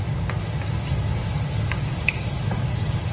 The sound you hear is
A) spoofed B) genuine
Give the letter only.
B